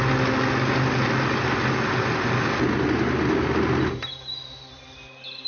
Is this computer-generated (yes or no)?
no